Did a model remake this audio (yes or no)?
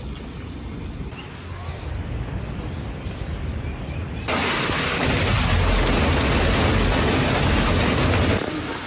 no